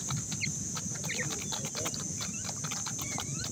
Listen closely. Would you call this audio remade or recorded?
recorded